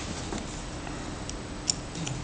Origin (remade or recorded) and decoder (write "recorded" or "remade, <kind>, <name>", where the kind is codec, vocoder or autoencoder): recorded